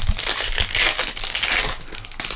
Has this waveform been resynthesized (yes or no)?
no